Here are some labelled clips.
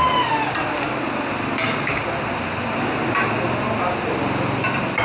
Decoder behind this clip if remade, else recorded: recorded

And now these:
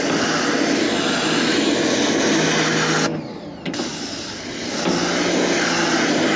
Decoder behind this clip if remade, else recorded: recorded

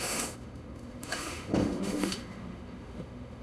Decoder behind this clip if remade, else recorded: remade, autoencoder, DAC-VAE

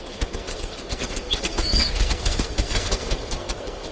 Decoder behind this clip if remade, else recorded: remade, codec, SNAC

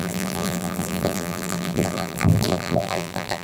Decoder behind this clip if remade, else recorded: remade, vocoder, BigVGAN v2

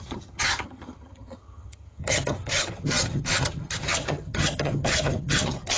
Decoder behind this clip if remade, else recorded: remade, vocoder, HiFi-GAN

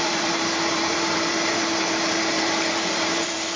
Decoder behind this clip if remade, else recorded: remade, vocoder, BigVGAN v2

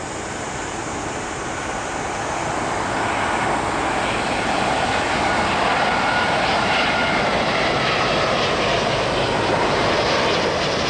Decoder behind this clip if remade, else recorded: recorded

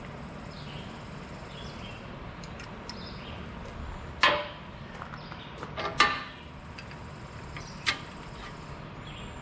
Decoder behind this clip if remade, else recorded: recorded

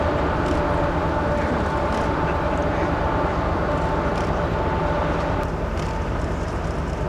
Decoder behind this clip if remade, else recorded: recorded